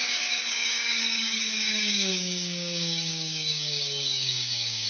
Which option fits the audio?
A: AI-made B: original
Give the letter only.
A